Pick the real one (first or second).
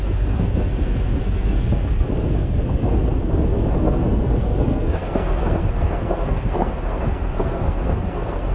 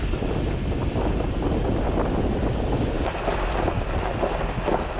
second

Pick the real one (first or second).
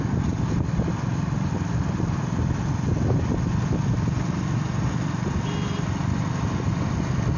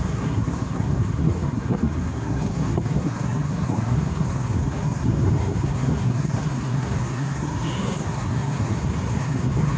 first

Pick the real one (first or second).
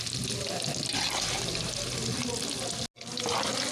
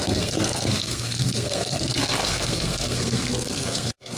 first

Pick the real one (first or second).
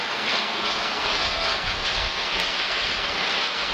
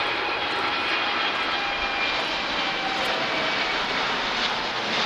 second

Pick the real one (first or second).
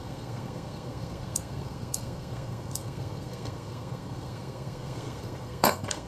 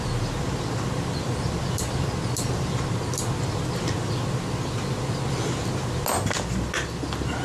second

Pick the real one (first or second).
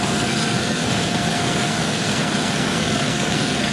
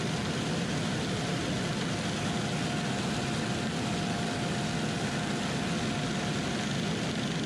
second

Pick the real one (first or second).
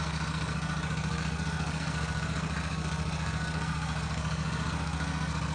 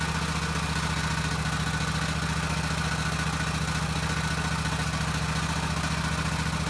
second